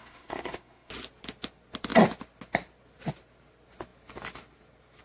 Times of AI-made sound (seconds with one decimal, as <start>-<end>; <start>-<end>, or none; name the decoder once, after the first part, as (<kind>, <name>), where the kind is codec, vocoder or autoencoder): 0.0-0.9 (codec, SNAC)